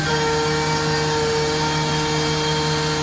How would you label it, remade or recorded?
recorded